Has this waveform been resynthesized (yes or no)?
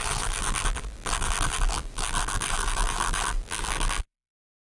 yes